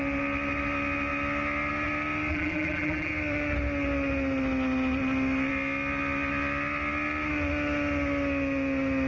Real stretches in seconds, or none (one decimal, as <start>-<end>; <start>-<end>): 0.0-2.3; 3.1-9.1